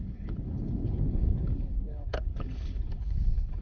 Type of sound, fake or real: fake